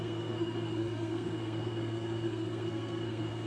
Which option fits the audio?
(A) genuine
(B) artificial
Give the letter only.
B